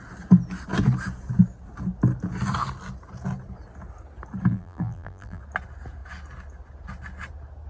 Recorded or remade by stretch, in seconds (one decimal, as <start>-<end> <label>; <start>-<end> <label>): 0.0-4.5 recorded; 4.5-5.4 remade; 5.4-7.7 recorded